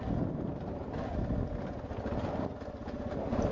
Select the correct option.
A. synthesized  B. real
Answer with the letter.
B